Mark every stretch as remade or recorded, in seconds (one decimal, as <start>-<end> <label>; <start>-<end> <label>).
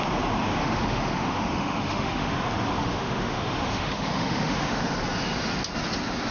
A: 0.0-0.6 recorded; 0.6-2.3 remade; 2.3-2.8 recorded; 2.8-4.9 remade; 4.9-6.3 recorded